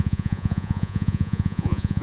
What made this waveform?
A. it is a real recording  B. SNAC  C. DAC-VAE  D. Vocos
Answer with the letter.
D